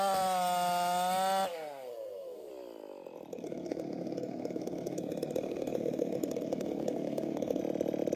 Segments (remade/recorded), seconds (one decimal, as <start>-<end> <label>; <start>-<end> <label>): 0.0-1.5 recorded; 1.5-2.5 remade; 2.5-3.3 recorded; 3.3-7.6 remade; 7.6-8.2 recorded